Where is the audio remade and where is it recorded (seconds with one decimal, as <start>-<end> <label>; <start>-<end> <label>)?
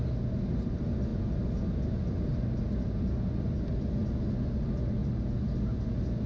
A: 0.0-6.3 recorded